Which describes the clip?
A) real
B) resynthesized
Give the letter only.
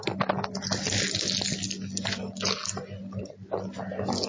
A